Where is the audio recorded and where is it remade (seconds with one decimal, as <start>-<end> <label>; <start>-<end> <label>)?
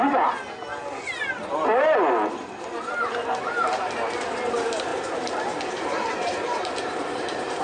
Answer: 0.0-4.9 recorded; 4.9-7.6 remade